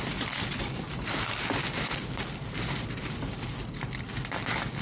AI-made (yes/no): no